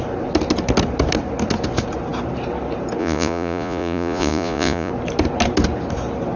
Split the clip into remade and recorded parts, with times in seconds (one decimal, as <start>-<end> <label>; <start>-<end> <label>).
0.0-3.0 recorded; 3.0-4.9 remade; 4.9-6.4 recorded